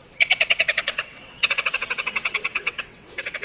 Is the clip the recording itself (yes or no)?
no